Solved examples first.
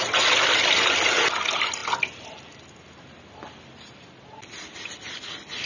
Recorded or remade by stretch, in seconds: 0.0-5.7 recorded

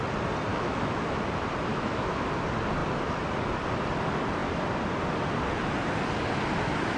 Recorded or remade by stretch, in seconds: 0.0-0.5 recorded; 0.5-1.2 remade; 1.2-1.7 recorded; 1.7-2.3 remade; 2.3-7.0 recorded

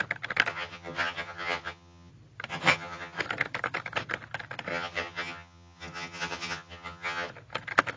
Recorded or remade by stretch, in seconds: 0.0-0.5 recorded; 0.5-2.1 remade; 2.1-2.5 recorded; 2.5-3.2 remade; 3.2-4.7 recorded; 4.7-7.3 remade; 7.3-8.0 recorded

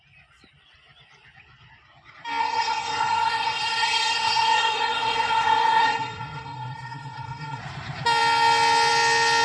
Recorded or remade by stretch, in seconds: 0.0-2.4 recorded; 2.4-7.6 remade; 7.6-9.4 recorded